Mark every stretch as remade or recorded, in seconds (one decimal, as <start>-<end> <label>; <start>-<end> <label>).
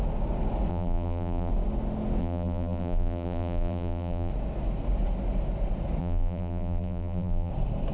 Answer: 0.0-0.7 recorded; 0.7-1.5 remade; 1.5-2.2 recorded; 2.2-4.3 remade; 4.3-6.0 recorded; 6.0-7.5 remade; 7.5-7.9 recorded